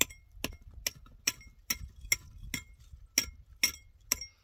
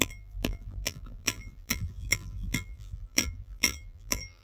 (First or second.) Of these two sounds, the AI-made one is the second